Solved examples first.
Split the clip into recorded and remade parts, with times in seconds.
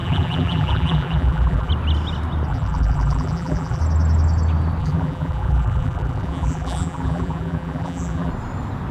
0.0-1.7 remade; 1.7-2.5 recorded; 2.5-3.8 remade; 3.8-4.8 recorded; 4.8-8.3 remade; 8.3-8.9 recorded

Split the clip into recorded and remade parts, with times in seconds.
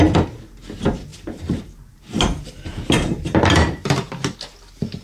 0.0-1.1 recorded; 1.1-4.1 remade; 4.1-5.0 recorded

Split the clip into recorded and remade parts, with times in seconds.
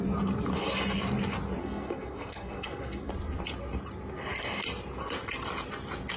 0.0-1.6 recorded; 1.6-3.1 remade; 3.1-6.2 recorded